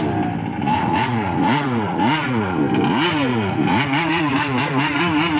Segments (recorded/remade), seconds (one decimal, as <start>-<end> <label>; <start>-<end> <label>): 0.0-0.5 recorded; 0.5-2.6 remade; 2.6-3.3 recorded; 3.3-5.0 remade; 5.0-5.4 recorded

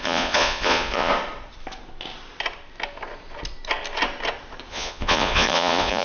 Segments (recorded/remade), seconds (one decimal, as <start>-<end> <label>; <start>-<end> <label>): 0.0-1.1 remade; 1.1-4.7 recorded; 4.7-6.0 remade